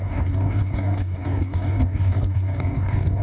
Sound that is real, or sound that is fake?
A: fake